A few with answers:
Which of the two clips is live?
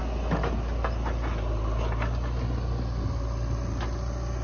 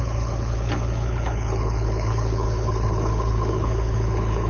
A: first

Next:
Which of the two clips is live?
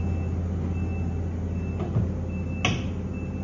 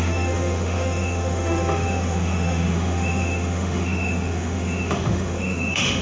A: first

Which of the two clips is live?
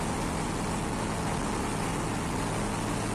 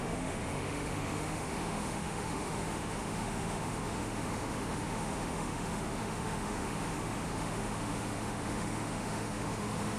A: first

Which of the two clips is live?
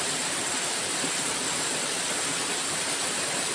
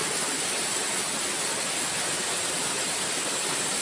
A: second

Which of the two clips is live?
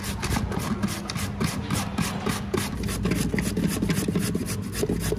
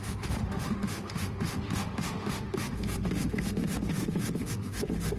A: first